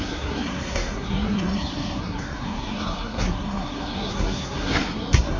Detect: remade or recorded remade